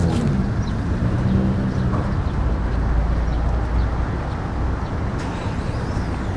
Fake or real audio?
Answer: real